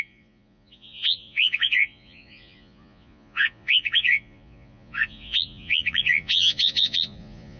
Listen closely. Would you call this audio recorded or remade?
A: remade